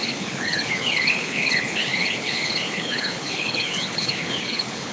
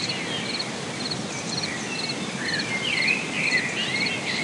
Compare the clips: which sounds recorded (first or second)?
second